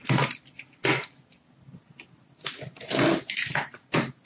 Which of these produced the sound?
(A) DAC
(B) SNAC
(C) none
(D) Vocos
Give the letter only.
C